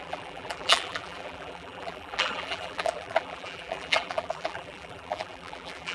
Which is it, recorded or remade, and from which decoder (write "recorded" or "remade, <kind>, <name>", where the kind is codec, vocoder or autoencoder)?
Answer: remade, vocoder, BigVGAN v2